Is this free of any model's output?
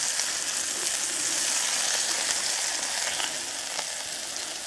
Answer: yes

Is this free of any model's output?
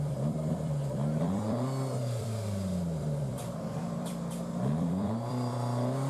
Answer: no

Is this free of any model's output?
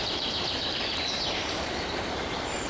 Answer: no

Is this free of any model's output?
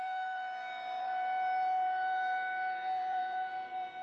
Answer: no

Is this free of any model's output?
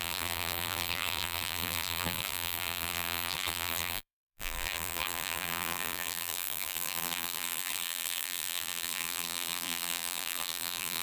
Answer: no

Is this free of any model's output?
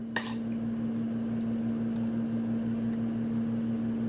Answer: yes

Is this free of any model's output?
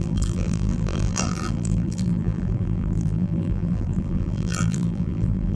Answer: no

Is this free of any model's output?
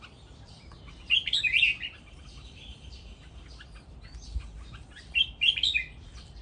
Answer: no